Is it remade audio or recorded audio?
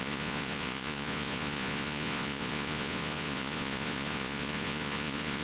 remade